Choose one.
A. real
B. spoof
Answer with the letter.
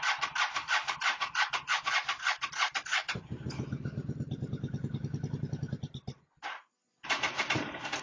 A